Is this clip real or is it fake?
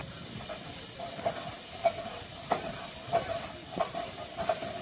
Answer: real